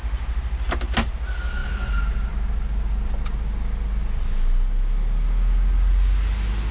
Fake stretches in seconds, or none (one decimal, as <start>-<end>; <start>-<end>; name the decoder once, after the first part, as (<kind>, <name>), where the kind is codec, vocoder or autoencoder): none